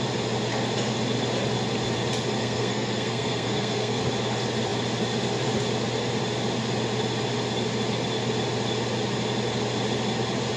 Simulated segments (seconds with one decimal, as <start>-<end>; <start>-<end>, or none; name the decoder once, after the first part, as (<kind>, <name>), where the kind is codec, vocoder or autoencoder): 2.4-4.0 (codec, SNAC)